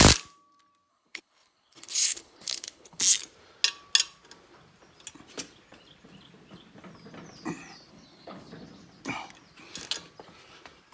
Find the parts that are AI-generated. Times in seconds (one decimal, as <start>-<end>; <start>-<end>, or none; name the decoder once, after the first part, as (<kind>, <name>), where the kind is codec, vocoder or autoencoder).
0.9-3.0 (codec, HILCodec); 7.9-8.5